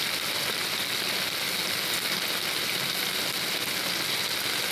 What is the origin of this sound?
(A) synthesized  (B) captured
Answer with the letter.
B